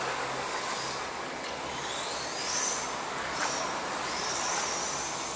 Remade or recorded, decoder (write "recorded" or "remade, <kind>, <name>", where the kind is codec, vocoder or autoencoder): recorded